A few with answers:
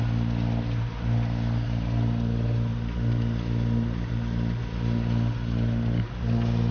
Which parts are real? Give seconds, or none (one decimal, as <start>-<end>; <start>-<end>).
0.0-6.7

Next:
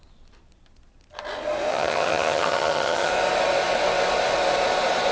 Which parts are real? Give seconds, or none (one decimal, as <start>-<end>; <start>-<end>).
0.0-1.7; 3.1-5.1

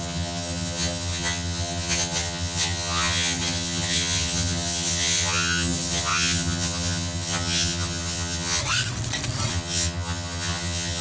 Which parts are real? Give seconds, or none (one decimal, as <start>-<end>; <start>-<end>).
8.6-9.5